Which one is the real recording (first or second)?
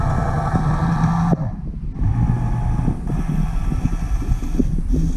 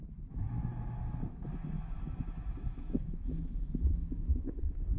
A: first